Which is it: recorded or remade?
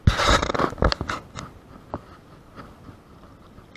recorded